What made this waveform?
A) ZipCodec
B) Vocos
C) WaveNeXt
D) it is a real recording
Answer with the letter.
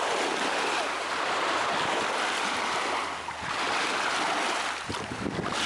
D